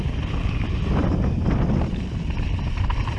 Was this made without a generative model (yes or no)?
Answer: yes